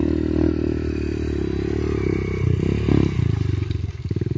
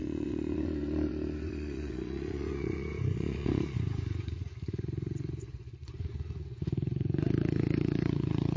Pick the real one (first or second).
first